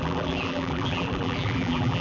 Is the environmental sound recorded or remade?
remade